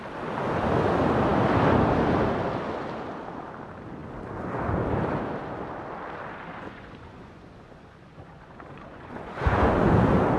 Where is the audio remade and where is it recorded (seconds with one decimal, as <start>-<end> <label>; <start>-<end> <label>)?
0.0-6.5 recorded; 6.5-9.9 remade; 9.9-10.4 recorded